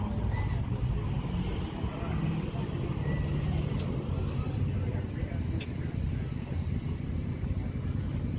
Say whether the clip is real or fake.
real